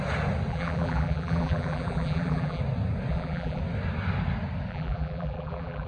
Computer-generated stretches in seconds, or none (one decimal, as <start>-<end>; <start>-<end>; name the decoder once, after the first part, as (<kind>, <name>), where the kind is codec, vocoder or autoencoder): 0.5-2.6 (vocoder, BigVGAN v2); 3.1-3.6; 4.7-5.9

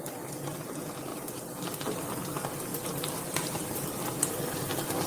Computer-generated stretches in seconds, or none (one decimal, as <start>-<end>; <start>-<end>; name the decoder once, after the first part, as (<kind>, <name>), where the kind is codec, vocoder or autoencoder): 2.7-4.0 (vocoder, BigVGAN v2)

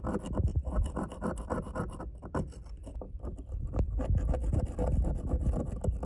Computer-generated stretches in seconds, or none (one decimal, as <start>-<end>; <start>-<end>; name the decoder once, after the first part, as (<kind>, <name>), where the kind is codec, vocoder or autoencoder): 0.5-4.0 (vocoder, BigVGAN v2); 4.4-5.2

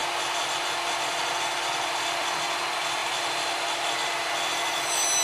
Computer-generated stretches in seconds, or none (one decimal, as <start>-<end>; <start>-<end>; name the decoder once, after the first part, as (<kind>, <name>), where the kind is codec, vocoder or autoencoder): 3.0-4.3 (vocoder, BigVGAN v2)

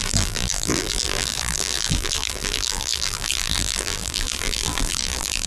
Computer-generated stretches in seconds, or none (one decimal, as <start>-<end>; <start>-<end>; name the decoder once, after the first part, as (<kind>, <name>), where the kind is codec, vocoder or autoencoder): 0.0-5.5 (vocoder, BigVGAN v2)

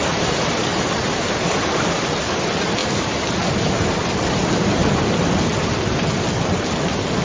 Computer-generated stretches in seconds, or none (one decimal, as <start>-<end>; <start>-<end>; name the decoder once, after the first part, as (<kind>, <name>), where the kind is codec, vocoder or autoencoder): 0.7-2.2 (vocoder, BigVGAN v2); 2.8-3.7

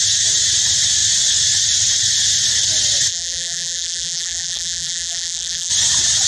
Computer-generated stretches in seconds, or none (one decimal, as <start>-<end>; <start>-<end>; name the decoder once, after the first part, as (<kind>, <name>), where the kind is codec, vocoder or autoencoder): 3.1-5.7 (vocoder, BigVGAN v2)

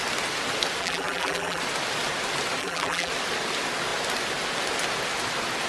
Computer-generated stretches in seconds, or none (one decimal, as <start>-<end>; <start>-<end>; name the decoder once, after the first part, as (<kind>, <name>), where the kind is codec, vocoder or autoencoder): 0.8-1.6 (vocoder, BigVGAN v2); 2.6-3.1